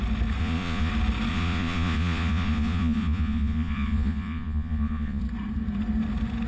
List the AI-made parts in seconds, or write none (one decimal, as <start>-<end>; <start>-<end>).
0.4-0.9; 1.3-5.2